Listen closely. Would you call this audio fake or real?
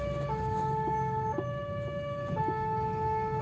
real